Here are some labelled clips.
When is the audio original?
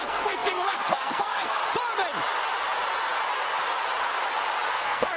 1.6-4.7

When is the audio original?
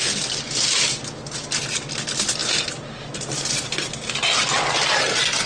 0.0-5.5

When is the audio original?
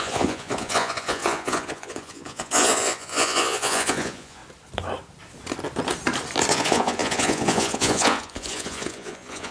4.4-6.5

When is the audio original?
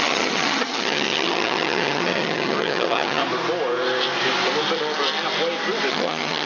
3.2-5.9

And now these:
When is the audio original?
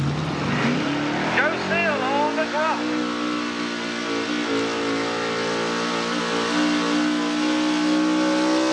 0.0-8.7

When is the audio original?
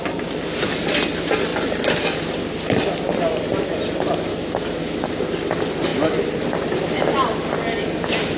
0.0-4.3; 5.1-8.4